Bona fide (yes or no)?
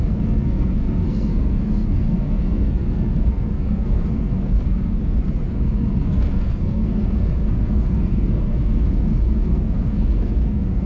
no